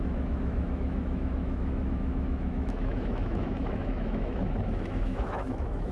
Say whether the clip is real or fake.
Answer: fake